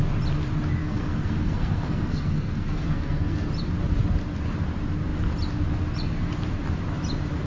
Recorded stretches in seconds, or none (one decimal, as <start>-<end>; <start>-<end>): 0.0-0.8; 3.5-7.5